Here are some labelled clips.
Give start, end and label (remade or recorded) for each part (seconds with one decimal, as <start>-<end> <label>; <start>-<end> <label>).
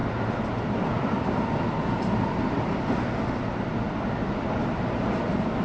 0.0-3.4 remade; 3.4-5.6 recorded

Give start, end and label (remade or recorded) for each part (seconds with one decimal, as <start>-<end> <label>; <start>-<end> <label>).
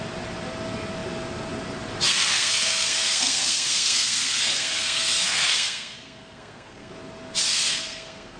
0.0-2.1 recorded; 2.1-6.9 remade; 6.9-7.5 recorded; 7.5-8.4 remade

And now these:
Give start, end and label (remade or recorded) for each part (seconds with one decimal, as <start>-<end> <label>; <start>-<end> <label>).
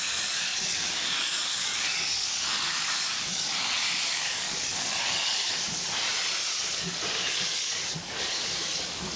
0.0-5.8 remade; 5.8-6.6 recorded; 6.6-9.2 remade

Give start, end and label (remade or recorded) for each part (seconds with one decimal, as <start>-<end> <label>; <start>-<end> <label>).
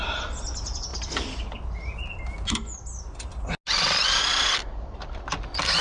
0.0-5.8 recorded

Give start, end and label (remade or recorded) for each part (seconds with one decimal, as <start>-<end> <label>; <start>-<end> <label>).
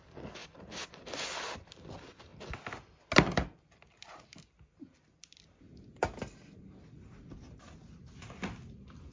0.0-9.1 recorded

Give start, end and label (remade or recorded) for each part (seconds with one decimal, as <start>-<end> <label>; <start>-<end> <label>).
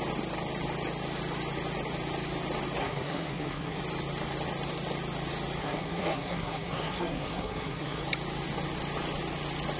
0.0-2.8 recorded; 2.8-3.8 remade; 3.8-5.6 recorded; 5.6-8.0 remade; 8.0-9.8 recorded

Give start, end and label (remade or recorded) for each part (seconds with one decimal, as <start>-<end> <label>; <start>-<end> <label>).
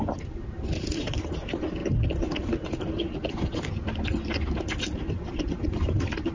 0.0-6.3 recorded